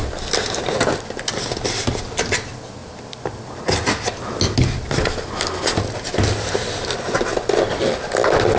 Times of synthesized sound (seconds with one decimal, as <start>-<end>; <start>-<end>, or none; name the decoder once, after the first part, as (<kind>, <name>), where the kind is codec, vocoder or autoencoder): none